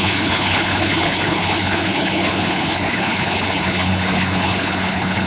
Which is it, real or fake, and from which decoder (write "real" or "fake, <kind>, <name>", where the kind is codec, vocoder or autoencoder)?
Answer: fake, codec, HILCodec